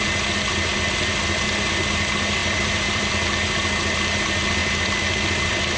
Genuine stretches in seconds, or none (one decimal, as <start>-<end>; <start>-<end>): 0.0-0.7; 1.6-2.4; 3.1-4.6